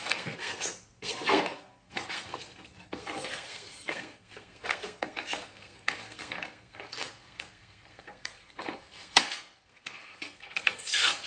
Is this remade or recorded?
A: remade